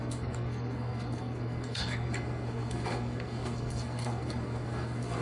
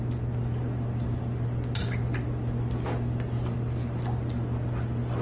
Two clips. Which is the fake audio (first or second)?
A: first